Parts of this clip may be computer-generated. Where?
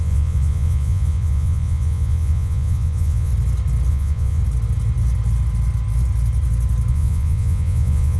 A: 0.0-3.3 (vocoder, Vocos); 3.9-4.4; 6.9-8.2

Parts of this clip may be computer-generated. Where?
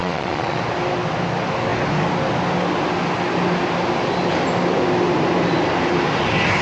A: 0.0-0.6 (vocoder, Vocos)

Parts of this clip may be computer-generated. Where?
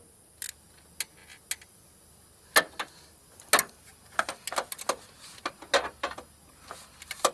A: none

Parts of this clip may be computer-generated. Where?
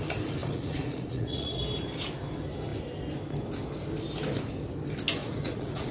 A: 0.4-1.6 (vocoder, Vocos); 5.2-5.9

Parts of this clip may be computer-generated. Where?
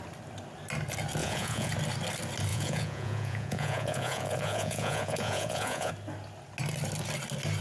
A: 1.2-1.7 (vocoder, Vocos); 2.5-5.9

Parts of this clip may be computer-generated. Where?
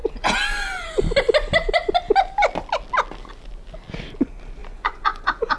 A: 0.0-1.0 (vocoder, Vocos); 4.6-5.6